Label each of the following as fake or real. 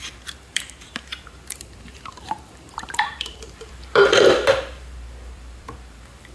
fake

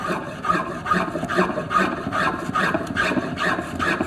real